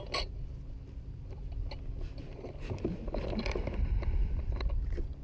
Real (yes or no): yes